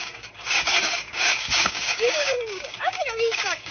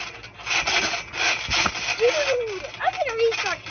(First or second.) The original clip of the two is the second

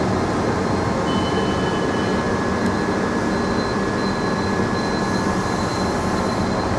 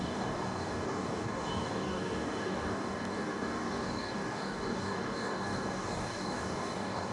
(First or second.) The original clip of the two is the first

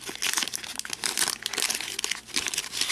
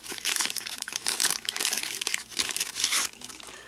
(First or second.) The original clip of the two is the first